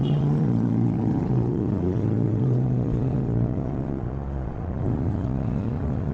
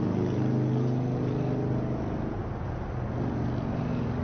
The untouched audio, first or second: second